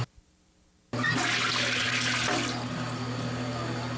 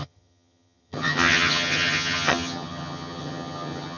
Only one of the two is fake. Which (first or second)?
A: second